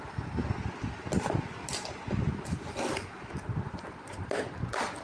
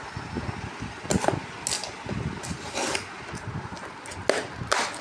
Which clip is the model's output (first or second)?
first